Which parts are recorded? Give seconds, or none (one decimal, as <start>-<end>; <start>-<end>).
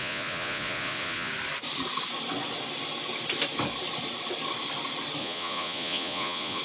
1.3-5.2